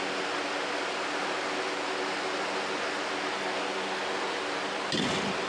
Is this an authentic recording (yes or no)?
yes